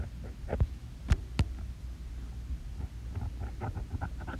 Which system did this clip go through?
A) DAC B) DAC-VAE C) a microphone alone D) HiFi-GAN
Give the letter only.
C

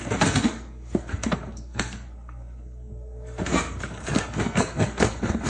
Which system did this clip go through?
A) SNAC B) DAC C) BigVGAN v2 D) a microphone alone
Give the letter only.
A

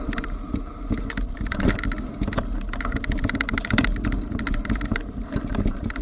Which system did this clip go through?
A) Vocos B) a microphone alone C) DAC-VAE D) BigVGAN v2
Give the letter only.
D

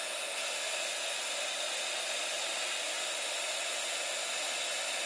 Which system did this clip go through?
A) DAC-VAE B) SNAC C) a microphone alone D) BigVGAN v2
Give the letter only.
C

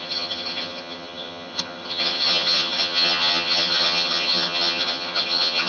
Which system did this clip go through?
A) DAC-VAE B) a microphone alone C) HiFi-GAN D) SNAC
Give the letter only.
C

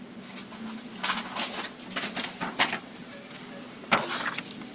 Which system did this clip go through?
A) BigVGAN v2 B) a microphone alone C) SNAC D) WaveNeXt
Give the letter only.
B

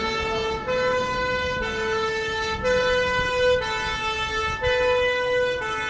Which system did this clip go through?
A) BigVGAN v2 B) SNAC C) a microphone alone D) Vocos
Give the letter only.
C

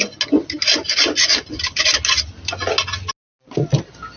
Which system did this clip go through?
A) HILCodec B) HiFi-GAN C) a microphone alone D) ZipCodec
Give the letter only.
C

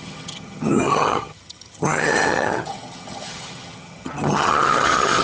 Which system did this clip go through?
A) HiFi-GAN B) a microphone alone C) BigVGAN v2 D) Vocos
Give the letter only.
A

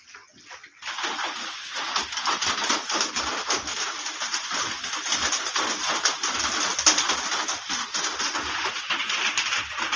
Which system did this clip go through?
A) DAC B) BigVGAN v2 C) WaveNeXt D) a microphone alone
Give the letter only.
D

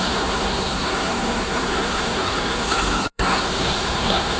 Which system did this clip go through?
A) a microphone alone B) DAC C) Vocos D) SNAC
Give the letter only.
D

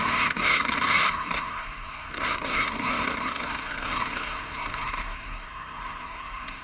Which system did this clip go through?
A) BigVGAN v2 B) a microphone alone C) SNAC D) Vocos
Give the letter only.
C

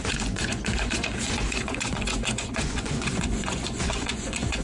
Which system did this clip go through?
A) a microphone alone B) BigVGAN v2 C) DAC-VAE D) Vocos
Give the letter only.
D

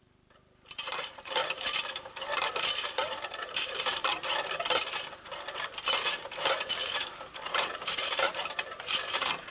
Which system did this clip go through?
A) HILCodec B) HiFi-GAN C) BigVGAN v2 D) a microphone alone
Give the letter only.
C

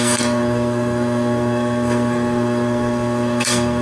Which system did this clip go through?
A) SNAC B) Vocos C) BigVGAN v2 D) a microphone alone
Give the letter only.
A